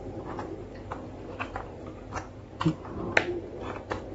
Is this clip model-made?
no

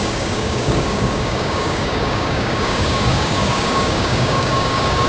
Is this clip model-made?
yes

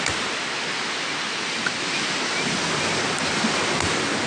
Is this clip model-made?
no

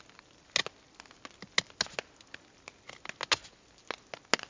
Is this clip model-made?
no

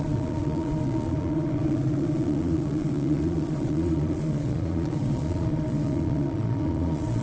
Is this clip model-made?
yes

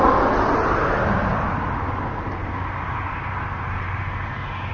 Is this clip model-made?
no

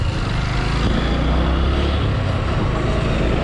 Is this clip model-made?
no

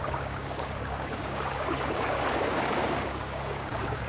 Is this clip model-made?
yes